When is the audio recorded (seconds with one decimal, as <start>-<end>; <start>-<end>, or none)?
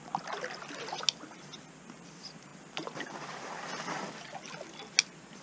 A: 0.0-2.5; 4.1-5.4